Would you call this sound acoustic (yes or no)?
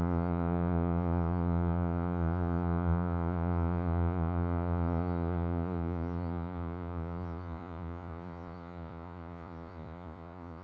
no